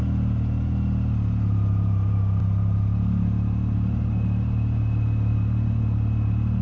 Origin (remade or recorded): recorded